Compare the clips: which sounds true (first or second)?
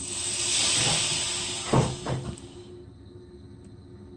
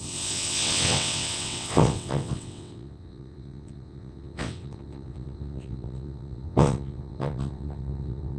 first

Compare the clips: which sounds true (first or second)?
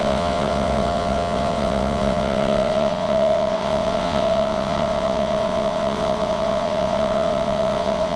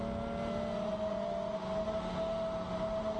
second